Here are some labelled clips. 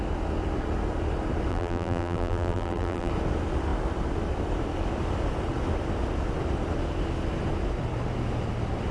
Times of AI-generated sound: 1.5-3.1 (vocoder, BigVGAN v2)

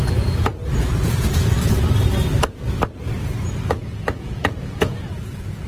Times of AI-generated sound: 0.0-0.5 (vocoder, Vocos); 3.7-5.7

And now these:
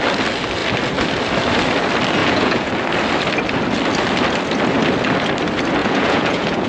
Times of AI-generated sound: 2.2-2.7 (vocoder, Vocos); 5.8-6.7